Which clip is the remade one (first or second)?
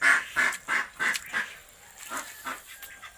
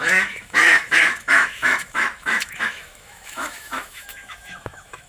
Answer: second